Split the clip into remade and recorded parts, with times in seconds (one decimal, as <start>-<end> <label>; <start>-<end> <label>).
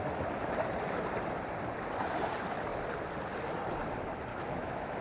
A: 0.0-4.3 recorded; 4.3-5.0 remade